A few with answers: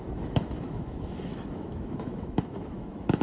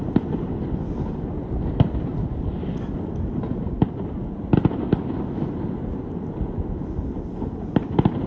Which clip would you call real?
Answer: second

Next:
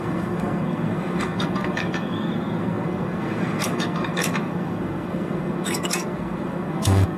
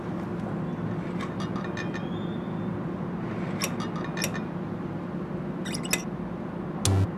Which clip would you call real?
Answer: second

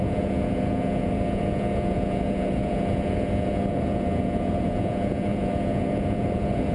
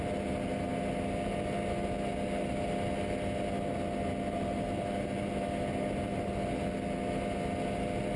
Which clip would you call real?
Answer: second